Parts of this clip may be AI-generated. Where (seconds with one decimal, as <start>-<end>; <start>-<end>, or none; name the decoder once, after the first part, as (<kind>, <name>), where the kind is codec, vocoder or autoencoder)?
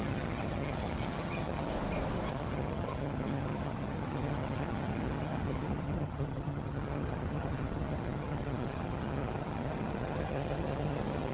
0.0-1.7 (vocoder, HiFi-GAN); 2.3-11.3